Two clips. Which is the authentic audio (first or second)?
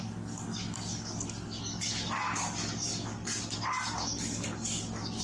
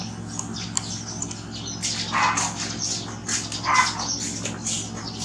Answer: second